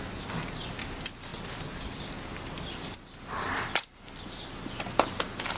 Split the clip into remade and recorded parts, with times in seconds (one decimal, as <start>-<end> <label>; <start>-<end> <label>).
0.0-1.3 recorded; 1.3-4.7 remade; 4.7-5.6 recorded